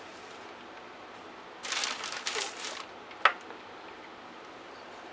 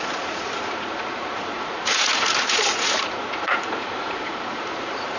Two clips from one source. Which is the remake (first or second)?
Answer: second